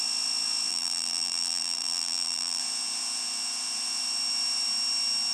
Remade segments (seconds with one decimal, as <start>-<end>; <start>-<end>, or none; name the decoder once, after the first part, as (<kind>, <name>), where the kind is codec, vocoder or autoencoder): 0.7-2.6 (vocoder, BigVGAN v2)